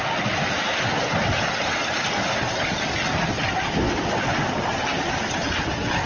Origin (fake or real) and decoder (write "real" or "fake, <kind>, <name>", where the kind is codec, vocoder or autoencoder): real